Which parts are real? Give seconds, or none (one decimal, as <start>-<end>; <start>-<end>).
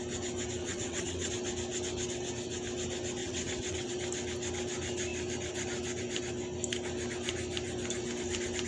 0.0-0.6; 1.3-3.2; 3.9-8.7